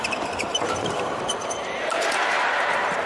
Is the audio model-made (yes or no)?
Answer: yes